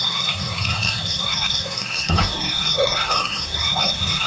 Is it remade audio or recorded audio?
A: remade